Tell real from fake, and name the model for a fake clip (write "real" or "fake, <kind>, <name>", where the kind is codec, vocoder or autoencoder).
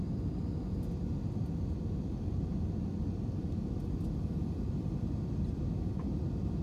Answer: real